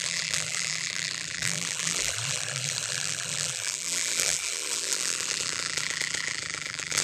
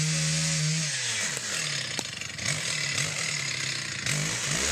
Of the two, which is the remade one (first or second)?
first